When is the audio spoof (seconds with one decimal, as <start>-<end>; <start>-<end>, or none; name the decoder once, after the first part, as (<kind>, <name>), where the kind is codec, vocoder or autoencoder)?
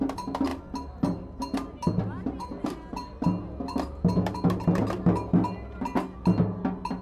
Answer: none